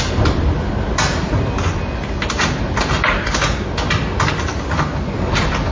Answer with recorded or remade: recorded